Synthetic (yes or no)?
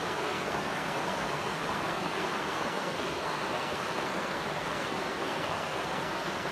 yes